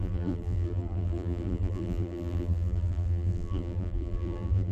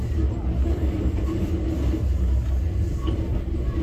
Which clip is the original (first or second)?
second